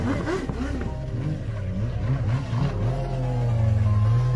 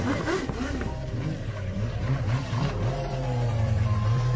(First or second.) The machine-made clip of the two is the second